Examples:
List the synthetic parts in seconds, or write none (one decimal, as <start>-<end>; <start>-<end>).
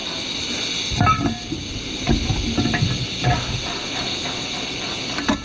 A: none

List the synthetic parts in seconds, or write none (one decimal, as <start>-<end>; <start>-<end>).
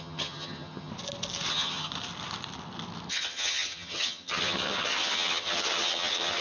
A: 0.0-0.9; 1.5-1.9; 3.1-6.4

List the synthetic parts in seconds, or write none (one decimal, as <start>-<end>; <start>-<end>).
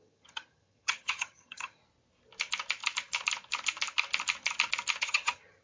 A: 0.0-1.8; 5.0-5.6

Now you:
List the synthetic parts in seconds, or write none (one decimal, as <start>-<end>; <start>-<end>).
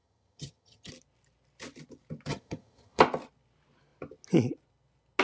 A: 0.0-0.9; 2.3-3.0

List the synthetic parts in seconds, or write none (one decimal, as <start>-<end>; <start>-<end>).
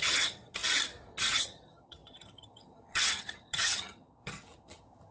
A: 0.0-0.6; 1.2-5.1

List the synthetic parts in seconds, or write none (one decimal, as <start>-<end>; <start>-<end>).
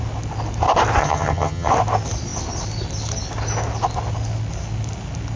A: 1.0-1.7